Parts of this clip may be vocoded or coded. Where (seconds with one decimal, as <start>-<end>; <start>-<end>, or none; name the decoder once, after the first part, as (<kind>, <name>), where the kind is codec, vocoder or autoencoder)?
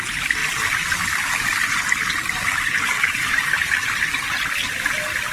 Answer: none